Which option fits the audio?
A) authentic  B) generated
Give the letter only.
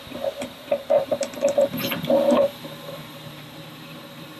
B